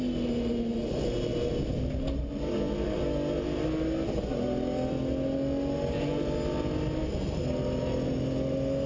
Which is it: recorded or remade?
recorded